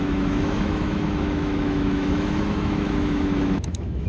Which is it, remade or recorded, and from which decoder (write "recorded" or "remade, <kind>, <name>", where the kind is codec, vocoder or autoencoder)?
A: remade, autoencoder, DAC-VAE